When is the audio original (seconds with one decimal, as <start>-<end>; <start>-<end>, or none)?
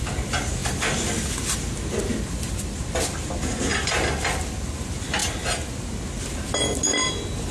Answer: 0.0-7.5